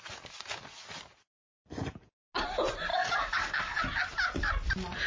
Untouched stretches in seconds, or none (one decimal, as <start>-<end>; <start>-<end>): 0.0-2.9; 3.8-5.1